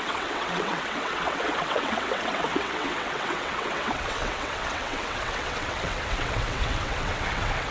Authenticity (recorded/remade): remade